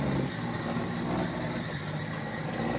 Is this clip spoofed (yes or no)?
no